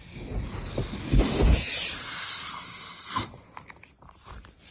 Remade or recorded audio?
recorded